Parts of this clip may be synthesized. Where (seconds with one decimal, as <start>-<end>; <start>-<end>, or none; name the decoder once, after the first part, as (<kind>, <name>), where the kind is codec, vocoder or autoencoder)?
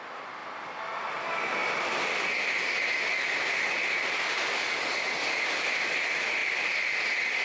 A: none